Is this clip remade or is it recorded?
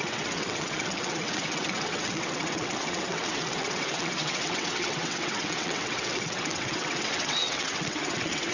remade